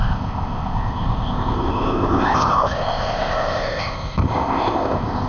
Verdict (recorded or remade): remade